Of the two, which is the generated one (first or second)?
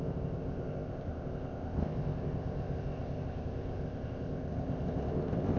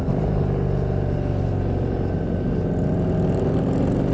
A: first